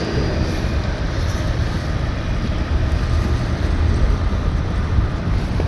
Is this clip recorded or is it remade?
remade